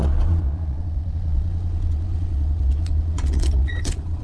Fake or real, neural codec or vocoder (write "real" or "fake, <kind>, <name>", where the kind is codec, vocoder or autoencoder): fake, vocoder, Vocos